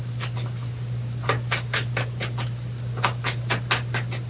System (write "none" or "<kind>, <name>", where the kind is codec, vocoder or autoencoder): none